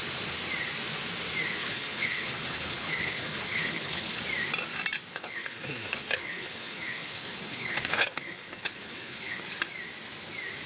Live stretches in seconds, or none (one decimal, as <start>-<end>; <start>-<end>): 0.0-1.6; 4.2-5.1; 9.4-10.7